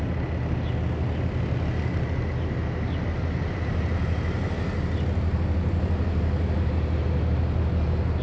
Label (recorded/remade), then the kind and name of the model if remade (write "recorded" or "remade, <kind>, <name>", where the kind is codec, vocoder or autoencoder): recorded